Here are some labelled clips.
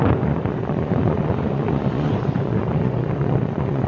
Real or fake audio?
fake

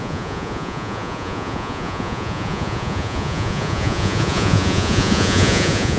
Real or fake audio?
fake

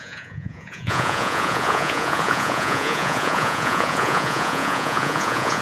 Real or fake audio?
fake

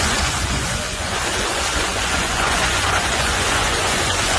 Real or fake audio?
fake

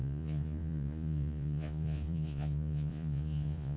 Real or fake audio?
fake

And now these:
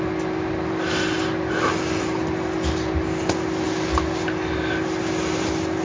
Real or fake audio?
real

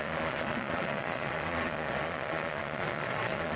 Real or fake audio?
fake